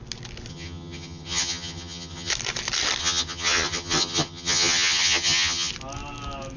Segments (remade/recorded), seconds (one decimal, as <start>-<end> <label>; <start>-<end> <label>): 0.0-0.5 recorded; 0.5-2.3 remade; 2.3-3.0 recorded; 3.0-5.7 remade; 5.7-6.6 recorded

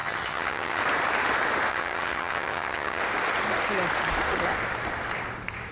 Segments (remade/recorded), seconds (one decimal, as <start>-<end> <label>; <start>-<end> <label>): 0.0-0.8 remade; 0.8-1.7 recorded; 1.7-3.0 remade; 3.0-5.7 recorded

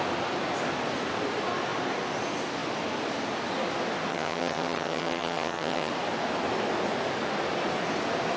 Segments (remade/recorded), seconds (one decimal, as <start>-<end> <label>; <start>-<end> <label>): 0.0-4.1 recorded; 4.1-5.9 remade; 5.9-8.4 recorded

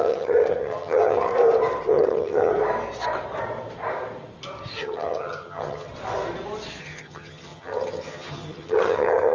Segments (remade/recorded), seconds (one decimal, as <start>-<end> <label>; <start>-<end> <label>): 0.0-1.3 remade; 1.3-1.9 recorded; 1.9-2.5 remade; 2.5-4.8 recorded; 4.8-5.9 remade; 5.9-6.8 recorded; 6.8-9.3 remade

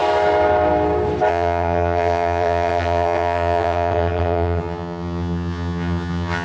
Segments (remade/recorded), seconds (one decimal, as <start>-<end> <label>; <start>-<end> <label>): 0.0-1.3 recorded; 1.3-6.4 remade

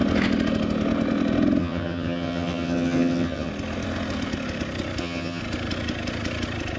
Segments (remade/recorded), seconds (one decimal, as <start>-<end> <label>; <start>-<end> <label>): 0.0-1.6 recorded; 1.6-3.5 remade; 3.5-5.0 recorded; 5.0-5.4 remade; 5.4-6.8 recorded

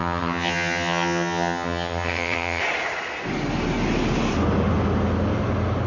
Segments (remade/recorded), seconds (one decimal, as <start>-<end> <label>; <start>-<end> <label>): 0.0-2.6 remade; 2.6-5.9 recorded